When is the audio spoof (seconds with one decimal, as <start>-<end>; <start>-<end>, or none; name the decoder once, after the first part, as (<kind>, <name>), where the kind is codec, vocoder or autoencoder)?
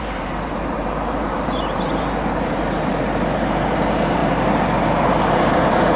0.0-6.0 (vocoder, BigVGAN v2)